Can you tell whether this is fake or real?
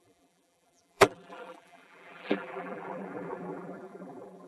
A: fake